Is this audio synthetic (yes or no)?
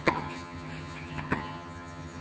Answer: yes